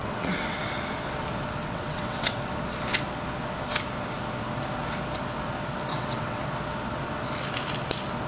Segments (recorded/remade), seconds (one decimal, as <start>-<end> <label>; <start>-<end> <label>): 0.0-0.6 remade; 0.6-1.6 recorded; 1.6-2.4 remade; 2.4-5.9 recorded; 5.9-6.4 remade; 6.4-8.3 recorded